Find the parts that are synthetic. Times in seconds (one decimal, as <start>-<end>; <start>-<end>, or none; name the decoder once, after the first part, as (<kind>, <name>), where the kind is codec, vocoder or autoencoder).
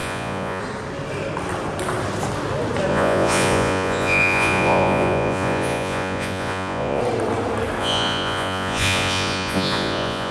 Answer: 0.0-0.6 (vocoder, Vocos); 2.9-7.0; 7.8-10.3